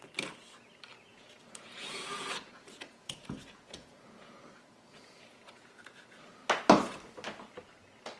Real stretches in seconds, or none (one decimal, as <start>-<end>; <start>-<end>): 0.0-1.1; 6.0-8.2